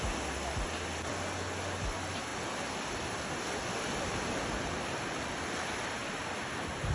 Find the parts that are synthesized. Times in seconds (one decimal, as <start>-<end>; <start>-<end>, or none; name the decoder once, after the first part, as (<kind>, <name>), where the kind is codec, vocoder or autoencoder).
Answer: none